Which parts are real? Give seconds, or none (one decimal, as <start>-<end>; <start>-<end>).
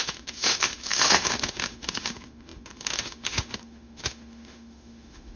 none